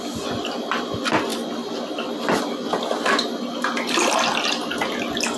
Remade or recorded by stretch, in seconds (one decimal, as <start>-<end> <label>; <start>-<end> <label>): 0.0-1.3 recorded; 1.3-2.4 remade; 2.4-5.4 recorded